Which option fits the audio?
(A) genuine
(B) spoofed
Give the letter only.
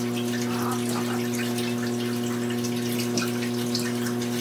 A